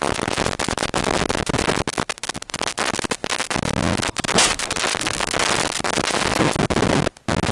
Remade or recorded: recorded